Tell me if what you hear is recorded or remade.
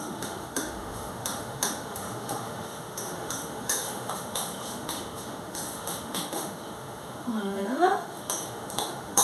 remade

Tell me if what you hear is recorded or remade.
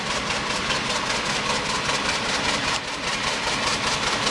recorded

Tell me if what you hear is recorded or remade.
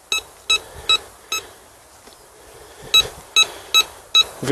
recorded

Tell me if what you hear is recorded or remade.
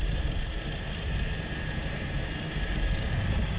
remade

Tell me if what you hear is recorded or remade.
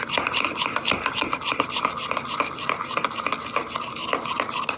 recorded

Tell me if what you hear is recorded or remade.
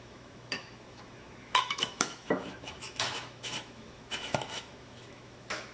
remade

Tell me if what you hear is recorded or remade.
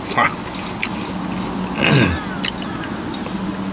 recorded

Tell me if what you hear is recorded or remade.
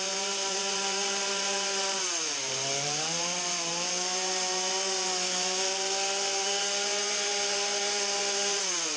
remade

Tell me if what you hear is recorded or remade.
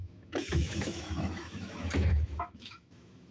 remade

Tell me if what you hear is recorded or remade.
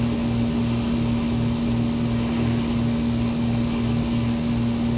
recorded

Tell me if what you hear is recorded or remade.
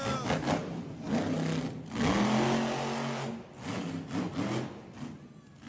recorded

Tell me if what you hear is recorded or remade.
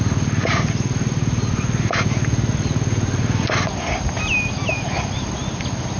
recorded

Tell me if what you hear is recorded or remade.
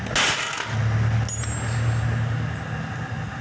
recorded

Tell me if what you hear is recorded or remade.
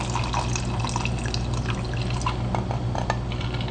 recorded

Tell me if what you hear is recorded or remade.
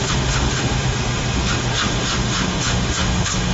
remade